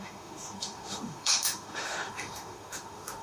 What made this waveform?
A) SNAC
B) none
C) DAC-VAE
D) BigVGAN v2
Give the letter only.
C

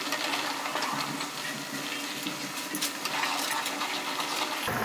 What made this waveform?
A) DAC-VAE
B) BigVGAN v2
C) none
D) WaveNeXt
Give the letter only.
C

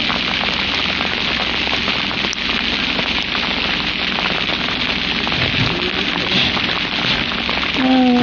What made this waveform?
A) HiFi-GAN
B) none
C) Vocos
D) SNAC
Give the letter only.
B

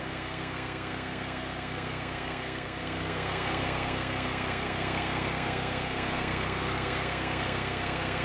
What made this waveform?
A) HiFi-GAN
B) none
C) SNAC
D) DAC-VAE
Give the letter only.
C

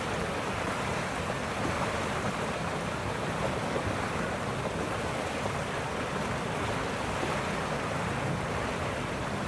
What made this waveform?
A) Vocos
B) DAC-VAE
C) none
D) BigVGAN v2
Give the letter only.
D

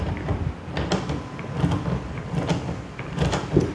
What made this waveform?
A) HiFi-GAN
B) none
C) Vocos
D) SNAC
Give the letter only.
B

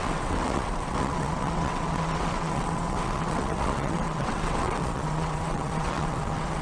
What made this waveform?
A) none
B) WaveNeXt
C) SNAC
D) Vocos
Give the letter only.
B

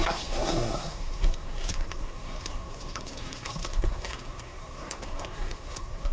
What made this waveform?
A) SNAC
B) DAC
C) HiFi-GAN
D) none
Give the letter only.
A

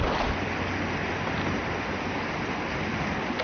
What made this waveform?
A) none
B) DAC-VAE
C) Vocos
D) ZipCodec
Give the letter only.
A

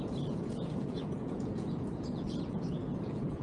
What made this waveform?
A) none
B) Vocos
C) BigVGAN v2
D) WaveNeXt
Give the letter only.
B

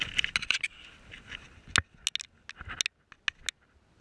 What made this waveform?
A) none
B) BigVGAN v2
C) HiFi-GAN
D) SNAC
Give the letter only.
A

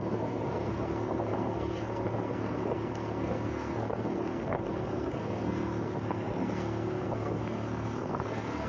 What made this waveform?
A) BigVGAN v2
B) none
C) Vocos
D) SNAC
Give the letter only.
D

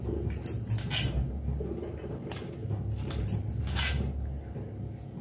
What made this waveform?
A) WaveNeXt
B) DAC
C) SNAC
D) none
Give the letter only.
D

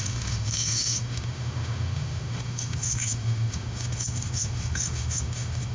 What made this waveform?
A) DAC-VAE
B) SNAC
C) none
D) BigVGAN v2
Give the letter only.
A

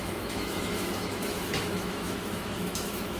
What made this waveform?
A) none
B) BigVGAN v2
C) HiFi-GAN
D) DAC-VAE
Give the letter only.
D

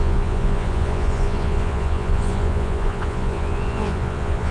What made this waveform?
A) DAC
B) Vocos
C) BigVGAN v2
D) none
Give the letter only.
B